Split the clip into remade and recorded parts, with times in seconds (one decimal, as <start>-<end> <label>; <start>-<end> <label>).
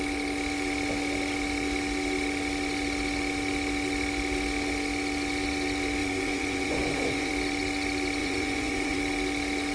0.0-6.0 recorded; 6.0-7.3 remade; 7.3-8.2 recorded; 8.2-9.0 remade; 9.0-9.7 recorded